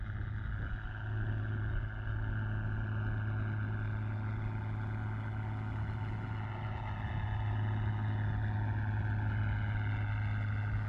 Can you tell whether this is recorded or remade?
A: recorded